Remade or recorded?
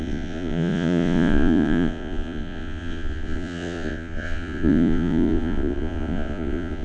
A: remade